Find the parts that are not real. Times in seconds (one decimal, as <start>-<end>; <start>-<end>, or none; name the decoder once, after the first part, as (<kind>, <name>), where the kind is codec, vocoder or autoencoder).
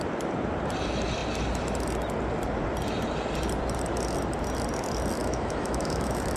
5.2-6.4 (autoencoder, DAC-VAE)